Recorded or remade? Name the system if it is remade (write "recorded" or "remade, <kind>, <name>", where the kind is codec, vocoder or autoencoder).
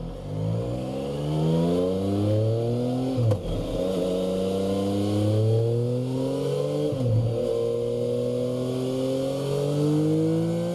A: recorded